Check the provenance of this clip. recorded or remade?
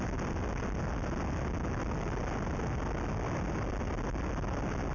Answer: recorded